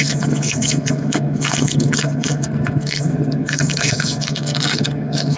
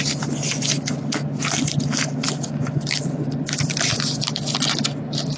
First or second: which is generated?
first